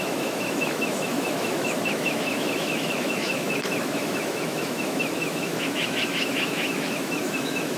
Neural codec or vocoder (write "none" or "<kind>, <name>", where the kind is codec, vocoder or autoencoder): autoencoder, DAC-VAE